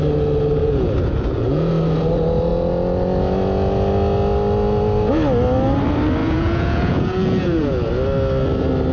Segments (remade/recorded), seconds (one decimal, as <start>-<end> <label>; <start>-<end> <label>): 0.0-0.6 recorded; 0.6-1.7 remade; 1.7-6.2 recorded; 6.2-7.9 remade; 7.9-8.9 recorded